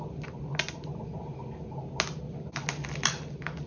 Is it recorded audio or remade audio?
recorded